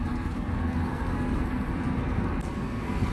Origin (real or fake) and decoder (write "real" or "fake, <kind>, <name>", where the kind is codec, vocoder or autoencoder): fake, codec, SNAC